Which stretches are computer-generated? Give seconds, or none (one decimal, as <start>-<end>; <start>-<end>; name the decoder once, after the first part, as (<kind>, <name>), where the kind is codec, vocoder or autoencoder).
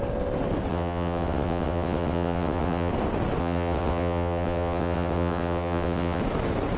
0.7-2.9 (vocoder, WaveNeXt); 3.4-6.2